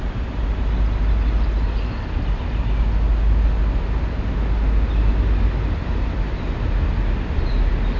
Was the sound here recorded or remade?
recorded